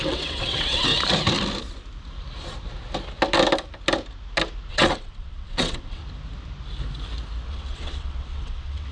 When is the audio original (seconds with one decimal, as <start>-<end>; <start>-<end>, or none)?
0.9-4.7; 6.0-7.5